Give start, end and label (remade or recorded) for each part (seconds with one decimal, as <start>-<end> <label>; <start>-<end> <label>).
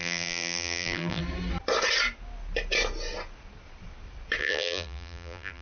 0.0-1.2 remade; 1.2-4.4 recorded; 4.4-5.6 remade